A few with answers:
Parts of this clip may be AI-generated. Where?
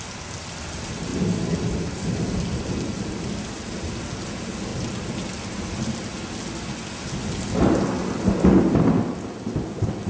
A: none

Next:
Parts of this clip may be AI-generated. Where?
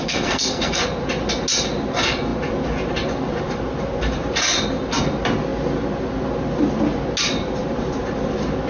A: 0.0-0.8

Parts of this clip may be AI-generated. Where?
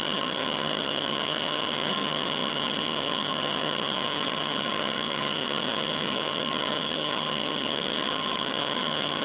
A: 0.0-9.2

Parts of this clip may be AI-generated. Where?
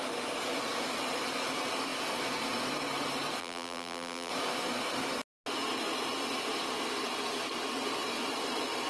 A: 3.4-4.3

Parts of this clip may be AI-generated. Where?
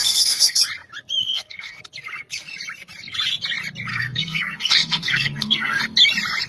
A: 0.0-0.6; 1.2-1.8; 3.9-5.8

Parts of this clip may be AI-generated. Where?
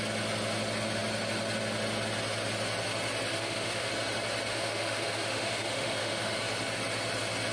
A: 3.3-3.9; 4.5-6.4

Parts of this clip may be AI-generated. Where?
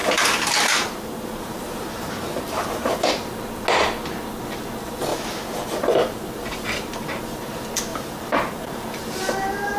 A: 0.0-3.1; 5.1-7.2; 7.9-9.0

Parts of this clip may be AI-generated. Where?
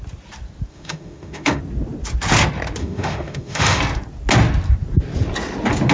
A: 0.7-1.6; 2.8-3.8